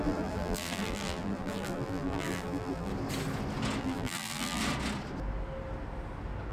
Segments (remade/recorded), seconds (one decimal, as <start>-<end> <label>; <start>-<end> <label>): 0.0-2.9 remade; 2.9-3.8 recorded; 3.8-4.6 remade; 4.6-6.5 recorded